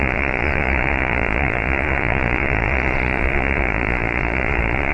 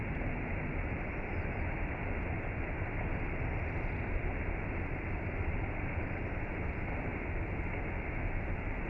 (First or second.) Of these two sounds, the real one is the second